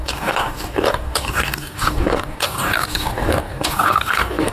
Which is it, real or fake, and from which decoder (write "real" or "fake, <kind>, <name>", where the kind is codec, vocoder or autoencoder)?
fake, codec, DAC